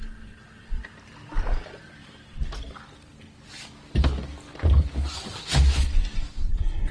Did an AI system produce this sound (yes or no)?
no